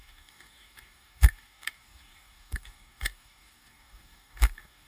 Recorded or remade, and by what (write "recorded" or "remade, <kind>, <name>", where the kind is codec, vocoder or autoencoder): remade, codec, DAC